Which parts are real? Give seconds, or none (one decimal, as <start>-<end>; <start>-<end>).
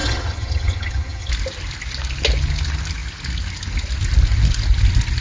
1.3-5.2